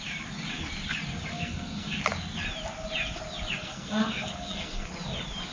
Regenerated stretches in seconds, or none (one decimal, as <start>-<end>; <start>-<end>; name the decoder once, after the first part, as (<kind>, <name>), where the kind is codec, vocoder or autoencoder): 1.3-2.0 (codec, SNAC); 3.6-4.9